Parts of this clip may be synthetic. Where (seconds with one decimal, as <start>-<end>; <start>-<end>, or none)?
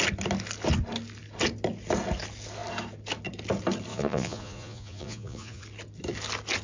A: 3.9-5.6